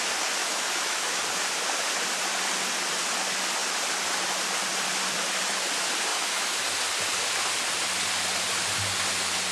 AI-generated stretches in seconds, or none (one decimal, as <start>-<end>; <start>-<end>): 0.4-1.2; 6.1-6.6